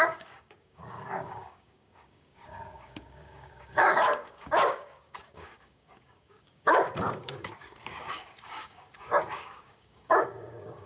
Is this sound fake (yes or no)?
yes